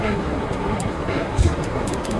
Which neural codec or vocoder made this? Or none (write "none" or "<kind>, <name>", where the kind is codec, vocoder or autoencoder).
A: codec, SNAC